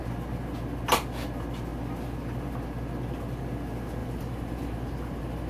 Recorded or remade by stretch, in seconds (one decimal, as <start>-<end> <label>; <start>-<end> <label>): 0.0-4.0 recorded; 4.0-5.5 remade